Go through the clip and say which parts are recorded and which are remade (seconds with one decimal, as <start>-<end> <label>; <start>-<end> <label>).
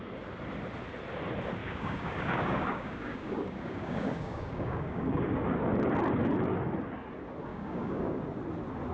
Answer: 0.0-1.6 recorded; 1.6-5.6 remade; 5.6-7.5 recorded; 7.5-8.2 remade; 8.2-8.9 recorded